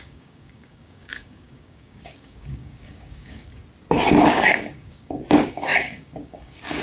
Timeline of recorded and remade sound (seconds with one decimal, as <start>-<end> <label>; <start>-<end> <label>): 0.0-3.6 remade; 3.6-4.2 recorded; 4.2-6.8 remade